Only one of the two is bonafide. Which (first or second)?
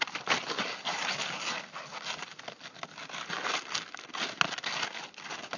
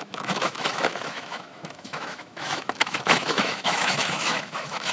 first